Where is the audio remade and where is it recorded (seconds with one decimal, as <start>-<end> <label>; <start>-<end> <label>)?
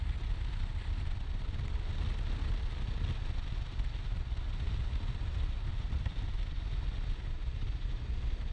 0.0-8.5 recorded